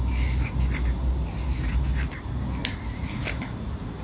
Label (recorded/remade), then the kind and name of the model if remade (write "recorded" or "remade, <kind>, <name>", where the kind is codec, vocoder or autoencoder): recorded